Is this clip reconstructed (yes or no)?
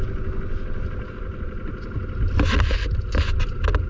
no